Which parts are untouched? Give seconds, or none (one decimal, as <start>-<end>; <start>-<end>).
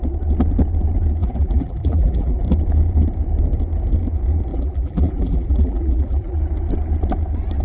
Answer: 0.0-1.2; 2.4-4.5; 6.4-7.6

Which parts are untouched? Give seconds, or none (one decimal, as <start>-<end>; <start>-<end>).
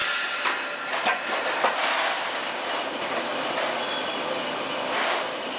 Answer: 0.0-5.6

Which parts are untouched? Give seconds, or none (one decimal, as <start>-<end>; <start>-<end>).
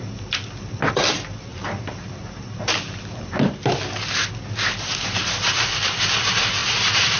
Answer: 0.0-1.5; 4.3-6.6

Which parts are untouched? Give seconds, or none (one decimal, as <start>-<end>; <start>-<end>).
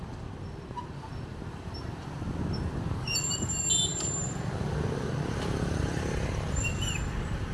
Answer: none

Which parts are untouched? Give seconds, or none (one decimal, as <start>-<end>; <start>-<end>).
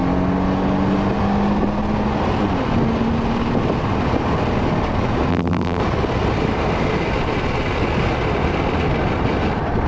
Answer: 0.0-5.3; 5.8-9.9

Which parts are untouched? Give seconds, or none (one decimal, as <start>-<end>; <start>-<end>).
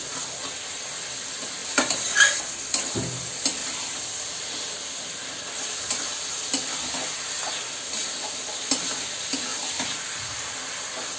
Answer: 0.0-1.6; 2.4-3.6; 6.3-9.5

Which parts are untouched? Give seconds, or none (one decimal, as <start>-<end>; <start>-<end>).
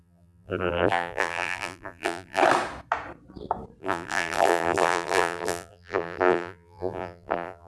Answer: 2.4-3.8